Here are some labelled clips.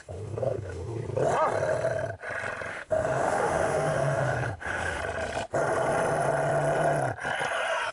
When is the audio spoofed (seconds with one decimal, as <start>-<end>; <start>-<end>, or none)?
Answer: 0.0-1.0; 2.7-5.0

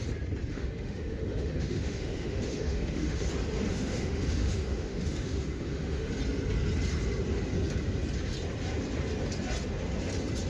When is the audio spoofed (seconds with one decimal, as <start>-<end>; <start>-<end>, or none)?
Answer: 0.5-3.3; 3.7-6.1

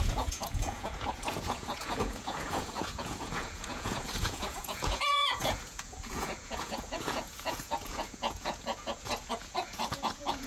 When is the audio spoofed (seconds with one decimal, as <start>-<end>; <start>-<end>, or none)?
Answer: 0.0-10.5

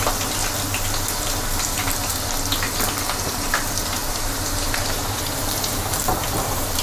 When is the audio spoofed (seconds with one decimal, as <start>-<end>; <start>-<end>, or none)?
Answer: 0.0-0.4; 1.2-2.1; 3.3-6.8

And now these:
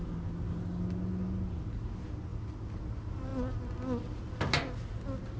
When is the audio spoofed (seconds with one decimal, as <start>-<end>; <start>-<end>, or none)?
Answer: none

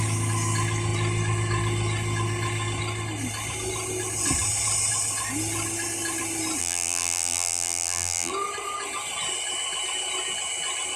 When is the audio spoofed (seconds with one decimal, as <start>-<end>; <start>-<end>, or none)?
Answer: 6.6-8.3

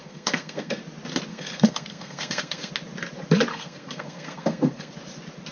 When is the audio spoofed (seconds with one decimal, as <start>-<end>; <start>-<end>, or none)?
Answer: 0.0-0.8; 1.3-2.7; 3.5-4.9

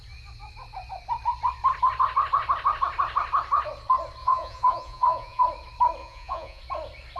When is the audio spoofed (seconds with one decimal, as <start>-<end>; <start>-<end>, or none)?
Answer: 4.2-5.4; 6.0-6.6